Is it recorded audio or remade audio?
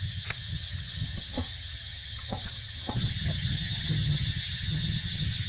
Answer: remade